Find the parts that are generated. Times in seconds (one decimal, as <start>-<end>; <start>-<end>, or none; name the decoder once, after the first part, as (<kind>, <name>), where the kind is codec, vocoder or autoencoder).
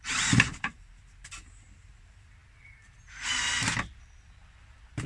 0.0-2.4 (vocoder, BigVGAN v2)